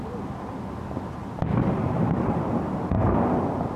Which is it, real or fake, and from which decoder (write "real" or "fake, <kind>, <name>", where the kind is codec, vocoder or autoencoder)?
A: real